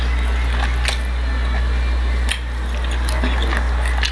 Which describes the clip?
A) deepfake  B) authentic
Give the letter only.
B